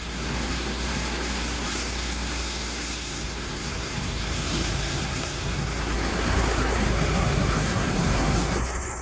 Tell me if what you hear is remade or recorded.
remade